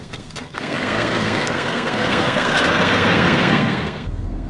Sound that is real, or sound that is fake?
fake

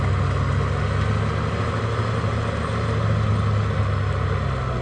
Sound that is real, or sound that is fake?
real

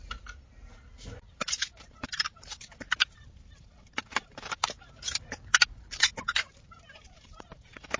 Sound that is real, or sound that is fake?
fake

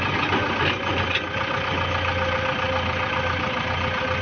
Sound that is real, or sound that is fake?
real